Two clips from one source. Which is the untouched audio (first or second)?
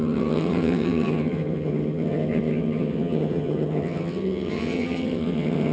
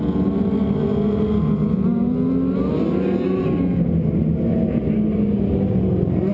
second